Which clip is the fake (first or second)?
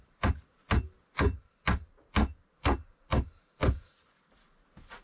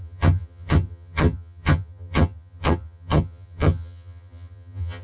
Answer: second